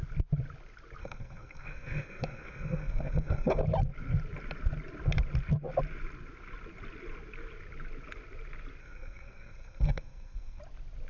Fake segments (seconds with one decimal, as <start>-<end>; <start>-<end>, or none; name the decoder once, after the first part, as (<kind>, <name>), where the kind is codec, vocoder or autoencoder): 1.0-3.6 (codec, SNAC); 8.8-10.6